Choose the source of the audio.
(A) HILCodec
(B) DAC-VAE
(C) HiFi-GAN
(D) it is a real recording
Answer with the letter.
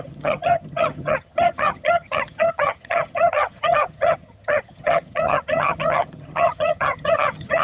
C